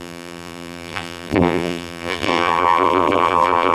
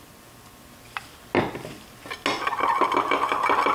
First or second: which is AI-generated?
first